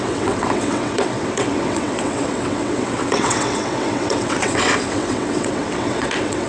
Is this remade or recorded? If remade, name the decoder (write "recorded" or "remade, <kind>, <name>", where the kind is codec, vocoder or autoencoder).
remade, vocoder, WaveNeXt